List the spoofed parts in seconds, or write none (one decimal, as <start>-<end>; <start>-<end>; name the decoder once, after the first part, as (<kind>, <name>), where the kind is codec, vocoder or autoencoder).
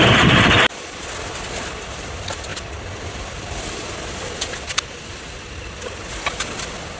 none